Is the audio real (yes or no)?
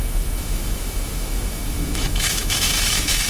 no